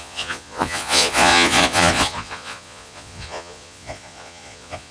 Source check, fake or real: fake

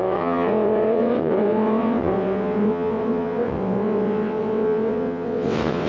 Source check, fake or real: fake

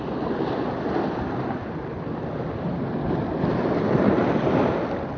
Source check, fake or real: real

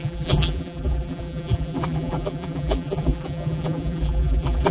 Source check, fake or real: fake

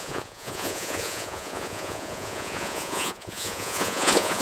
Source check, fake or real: fake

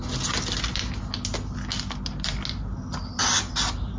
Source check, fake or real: real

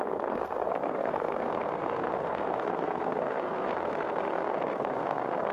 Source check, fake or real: fake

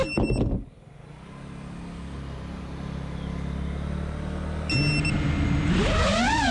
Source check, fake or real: real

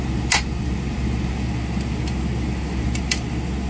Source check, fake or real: real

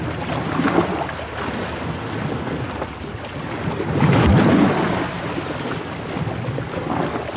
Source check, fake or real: real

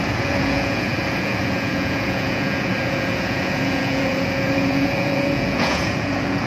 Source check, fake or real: fake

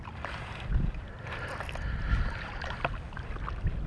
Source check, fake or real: real